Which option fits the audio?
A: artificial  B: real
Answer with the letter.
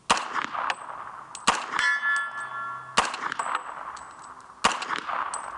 B